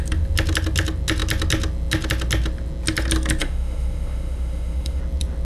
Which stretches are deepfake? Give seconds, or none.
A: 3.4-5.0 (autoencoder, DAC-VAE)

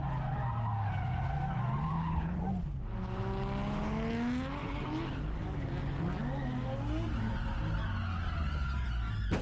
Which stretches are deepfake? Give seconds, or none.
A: 1.9-2.4 (codec, HILCodec)

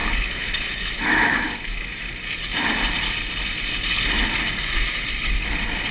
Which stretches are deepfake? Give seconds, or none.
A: 0.0-1.9 (autoencoder, DAC-VAE)

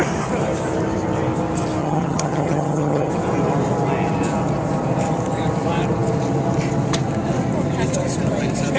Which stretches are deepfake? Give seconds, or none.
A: 1.8-3.1 (vocoder, HiFi-GAN)